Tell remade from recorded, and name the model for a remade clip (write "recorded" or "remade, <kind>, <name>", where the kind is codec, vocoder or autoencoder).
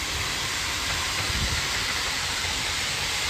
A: remade, vocoder, BigVGAN v2